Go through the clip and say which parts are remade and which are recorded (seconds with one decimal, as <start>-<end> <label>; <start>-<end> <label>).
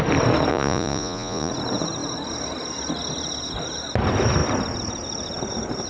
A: 0.0-0.5 recorded; 0.5-1.5 remade; 1.5-5.9 recorded